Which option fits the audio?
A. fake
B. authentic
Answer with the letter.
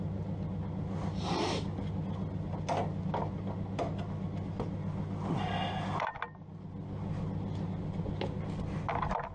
B